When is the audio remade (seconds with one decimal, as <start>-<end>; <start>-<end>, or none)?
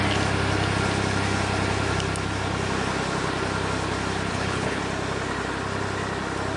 4.3-4.8